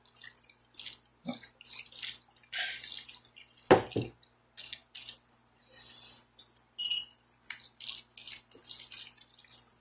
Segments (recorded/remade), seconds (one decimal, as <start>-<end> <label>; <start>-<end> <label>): 0.0-9.8 recorded